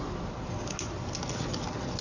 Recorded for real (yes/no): yes